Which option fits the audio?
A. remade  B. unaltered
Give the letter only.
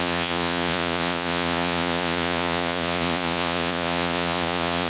A